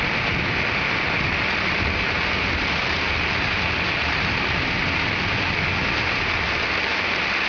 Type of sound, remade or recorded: recorded